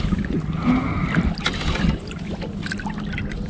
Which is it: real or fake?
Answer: real